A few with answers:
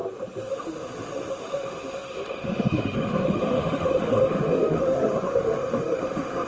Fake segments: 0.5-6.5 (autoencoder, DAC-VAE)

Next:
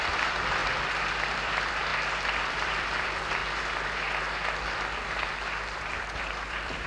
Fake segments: 0.0-0.6 (vocoder, BigVGAN v2); 1.1-1.9; 2.5-3.4; 5.8-6.9

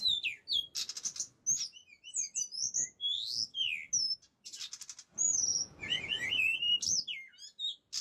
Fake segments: 5.5-6.6 (vocoder, Vocos)

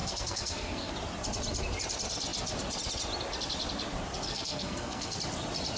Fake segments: 0.0-0.9 (codec, SNAC); 4.3-5.2

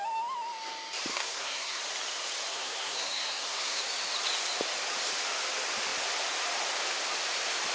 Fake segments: 1.1-1.8 (codec, SNAC); 2.5-3.8

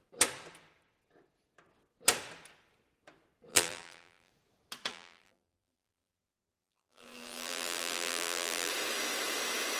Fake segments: 3.5-4.3 (vocoder, BigVGAN v2); 4.9-8.7

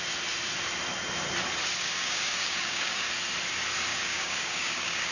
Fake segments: 1.8-3.1 (codec, DAC); 3.9-5.1

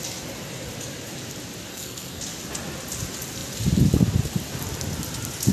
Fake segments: 1.7-2.2 (codec, SNAC)